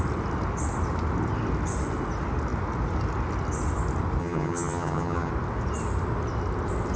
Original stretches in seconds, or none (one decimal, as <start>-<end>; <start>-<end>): 0.0-4.2; 5.3-7.0